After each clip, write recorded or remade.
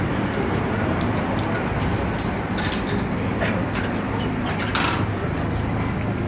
recorded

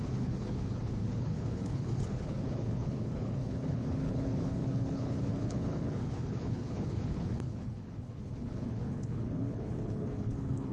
remade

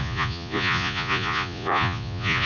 remade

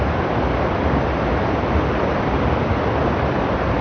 recorded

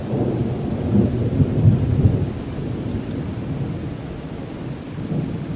recorded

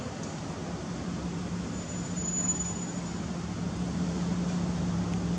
recorded